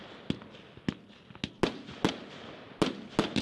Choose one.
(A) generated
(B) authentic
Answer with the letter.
B